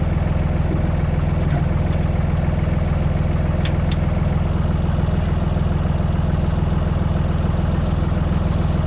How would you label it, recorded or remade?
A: recorded